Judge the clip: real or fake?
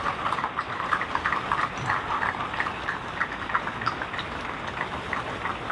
real